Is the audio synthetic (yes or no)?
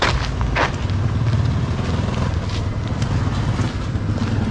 no